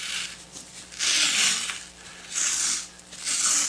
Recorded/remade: recorded